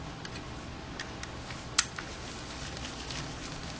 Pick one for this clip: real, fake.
real